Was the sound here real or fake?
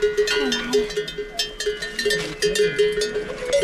real